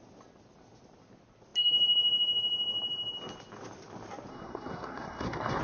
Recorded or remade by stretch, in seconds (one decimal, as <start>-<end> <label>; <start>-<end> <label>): 0.0-4.3 recorded; 4.3-5.6 remade